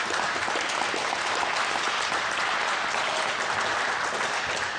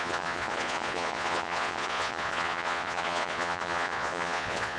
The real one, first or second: first